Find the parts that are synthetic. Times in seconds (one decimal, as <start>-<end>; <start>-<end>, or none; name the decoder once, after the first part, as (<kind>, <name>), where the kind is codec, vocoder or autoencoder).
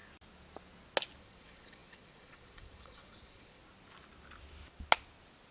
1.2-3.6 (vocoder, Vocos)